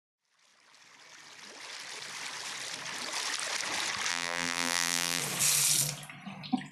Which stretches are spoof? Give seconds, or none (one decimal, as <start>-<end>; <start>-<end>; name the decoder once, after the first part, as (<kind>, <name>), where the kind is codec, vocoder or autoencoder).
4.1-5.2 (vocoder, BigVGAN v2)